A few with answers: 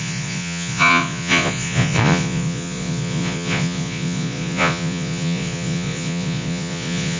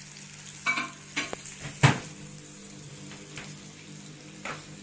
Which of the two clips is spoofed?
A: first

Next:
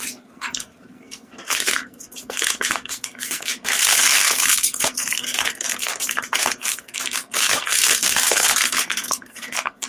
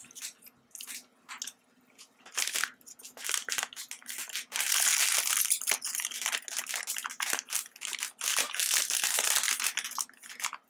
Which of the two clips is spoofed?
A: first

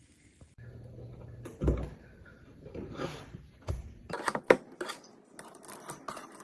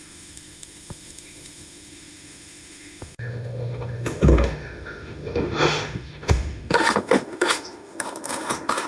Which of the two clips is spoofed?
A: second